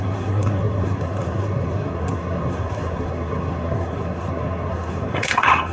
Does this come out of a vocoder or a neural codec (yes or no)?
yes